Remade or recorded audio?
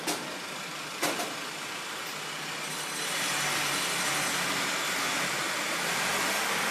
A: recorded